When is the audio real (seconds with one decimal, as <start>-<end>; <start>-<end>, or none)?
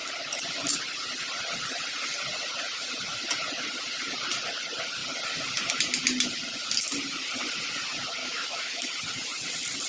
0.0-8.2; 8.9-9.9